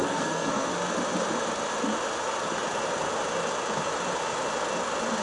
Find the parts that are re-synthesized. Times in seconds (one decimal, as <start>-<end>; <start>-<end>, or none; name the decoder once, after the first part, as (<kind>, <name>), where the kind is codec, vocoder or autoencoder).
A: 0.0-0.7 (codec, SNAC)